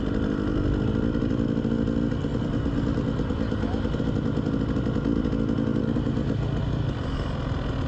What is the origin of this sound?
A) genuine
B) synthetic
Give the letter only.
A